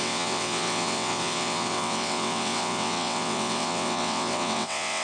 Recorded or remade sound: remade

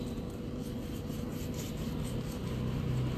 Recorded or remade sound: recorded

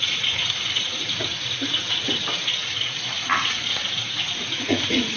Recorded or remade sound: remade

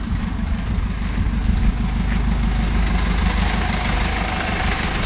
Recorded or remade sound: recorded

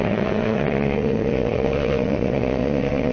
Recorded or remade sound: remade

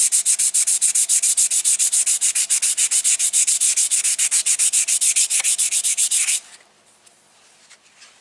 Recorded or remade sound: recorded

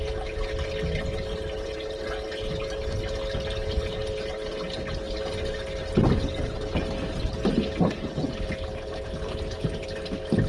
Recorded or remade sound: recorded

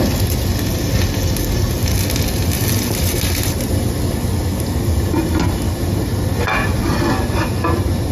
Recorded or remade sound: recorded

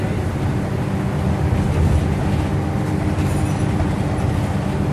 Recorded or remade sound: recorded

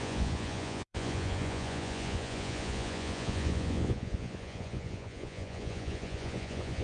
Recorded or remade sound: remade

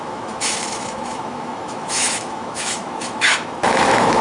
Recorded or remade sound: remade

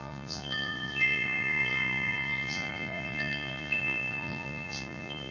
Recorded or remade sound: remade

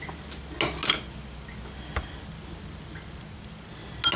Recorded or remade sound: recorded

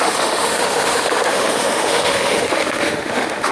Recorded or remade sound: remade